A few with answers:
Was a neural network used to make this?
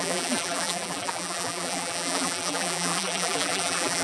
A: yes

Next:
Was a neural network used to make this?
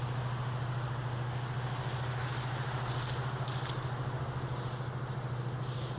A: no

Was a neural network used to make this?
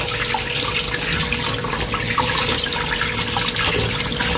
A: no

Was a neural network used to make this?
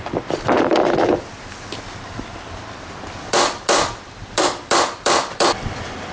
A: yes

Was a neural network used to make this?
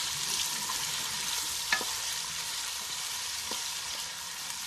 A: yes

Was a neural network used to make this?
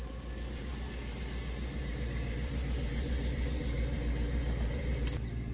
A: yes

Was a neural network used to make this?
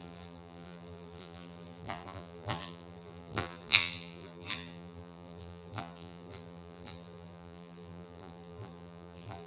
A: yes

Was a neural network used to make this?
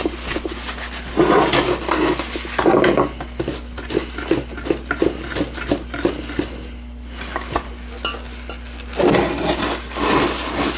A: no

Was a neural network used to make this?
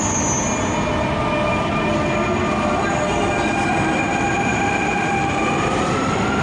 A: no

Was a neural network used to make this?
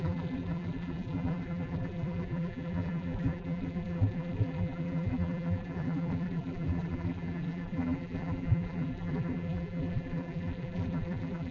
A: yes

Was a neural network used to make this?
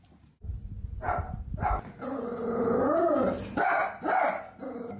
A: yes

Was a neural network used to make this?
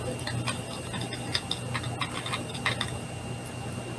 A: no